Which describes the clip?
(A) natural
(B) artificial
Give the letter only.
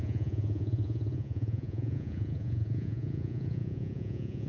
B